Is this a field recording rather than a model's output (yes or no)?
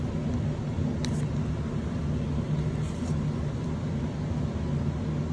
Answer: yes